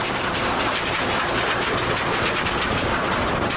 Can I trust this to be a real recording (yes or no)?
no